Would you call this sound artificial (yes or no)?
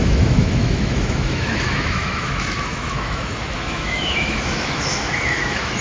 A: yes